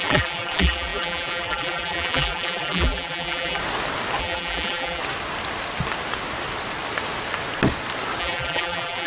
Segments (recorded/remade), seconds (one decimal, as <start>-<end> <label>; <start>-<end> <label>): 0.0-3.6 remade; 3.6-4.2 recorded; 4.2-5.0 remade; 5.0-8.2 recorded; 8.2-9.1 remade